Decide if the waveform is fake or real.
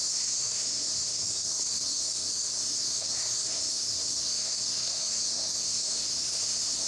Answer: fake